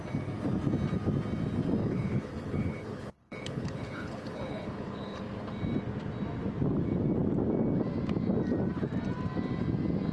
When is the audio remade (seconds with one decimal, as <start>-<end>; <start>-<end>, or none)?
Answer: 1.8-5.2